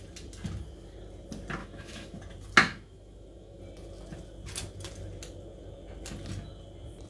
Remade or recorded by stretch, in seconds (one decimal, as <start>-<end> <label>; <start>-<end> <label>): 0.0-1.6 recorded; 1.6-2.2 remade; 2.2-2.6 recorded; 2.6-3.6 remade; 3.6-7.1 recorded